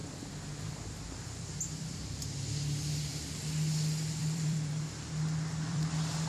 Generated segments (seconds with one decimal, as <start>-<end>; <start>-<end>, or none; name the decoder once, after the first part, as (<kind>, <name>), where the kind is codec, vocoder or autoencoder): 4.2-6.3 (vocoder, BigVGAN v2)